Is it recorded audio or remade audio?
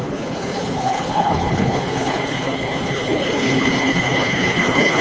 remade